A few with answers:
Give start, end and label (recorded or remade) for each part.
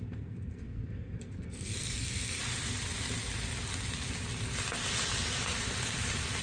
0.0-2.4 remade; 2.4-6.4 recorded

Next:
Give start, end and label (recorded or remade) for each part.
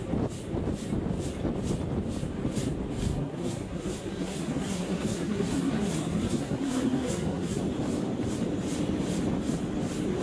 0.0-3.0 recorded; 3.0-7.6 remade; 7.6-10.2 recorded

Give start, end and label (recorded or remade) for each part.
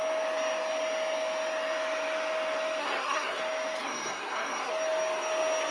0.0-2.8 recorded; 2.8-3.4 remade; 3.4-3.8 recorded; 3.8-4.7 remade; 4.7-5.7 recorded